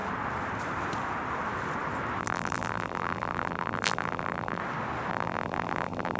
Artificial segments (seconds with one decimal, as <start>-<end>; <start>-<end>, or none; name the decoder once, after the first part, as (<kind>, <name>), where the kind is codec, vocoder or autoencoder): 2.2-4.6 (vocoder, BigVGAN v2); 5.1-6.2